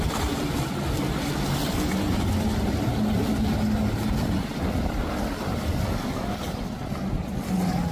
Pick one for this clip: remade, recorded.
recorded